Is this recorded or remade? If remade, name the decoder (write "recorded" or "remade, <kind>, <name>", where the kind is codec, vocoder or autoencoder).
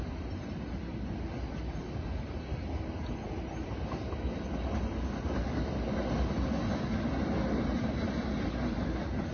recorded